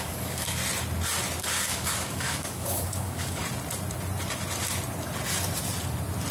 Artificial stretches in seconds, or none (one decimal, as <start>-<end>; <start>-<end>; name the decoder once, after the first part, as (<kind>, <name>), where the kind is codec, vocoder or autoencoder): 0.0-0.6 (codec, DAC); 1.4-3.4